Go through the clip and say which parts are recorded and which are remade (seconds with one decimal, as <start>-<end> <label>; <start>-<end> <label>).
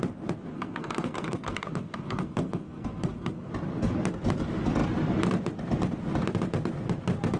0.0-0.5 recorded; 0.5-3.5 remade; 3.5-7.4 recorded